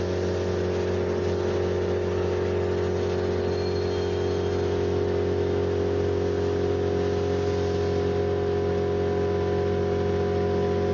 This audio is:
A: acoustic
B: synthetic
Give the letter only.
A